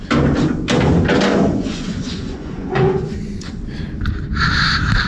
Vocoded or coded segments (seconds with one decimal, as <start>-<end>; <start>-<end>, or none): 1.3-3.6